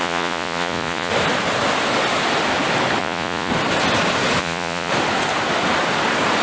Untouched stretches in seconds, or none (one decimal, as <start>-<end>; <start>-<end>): 1.1-3.0; 3.5-4.4; 4.9-6.4